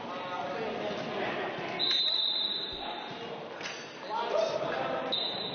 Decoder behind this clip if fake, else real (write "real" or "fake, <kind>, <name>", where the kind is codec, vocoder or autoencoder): real